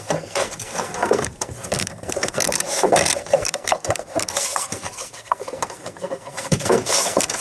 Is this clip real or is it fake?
fake